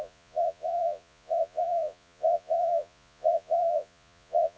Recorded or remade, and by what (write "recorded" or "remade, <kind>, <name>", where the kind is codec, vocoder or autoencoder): remade, vocoder, Vocos